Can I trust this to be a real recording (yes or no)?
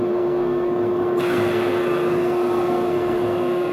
no